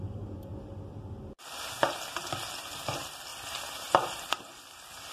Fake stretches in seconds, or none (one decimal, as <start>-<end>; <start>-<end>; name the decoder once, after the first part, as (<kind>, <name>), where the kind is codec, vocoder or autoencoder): 3.3-4.4 (vocoder, BigVGAN v2)